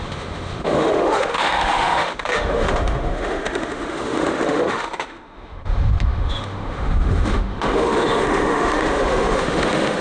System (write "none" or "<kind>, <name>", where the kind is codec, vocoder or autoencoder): autoencoder, DAC-VAE